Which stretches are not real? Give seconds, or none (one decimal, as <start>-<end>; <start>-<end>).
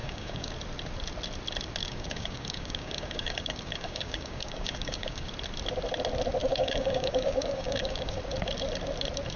0.0-0.5; 1.8-5.3; 6.4-8.2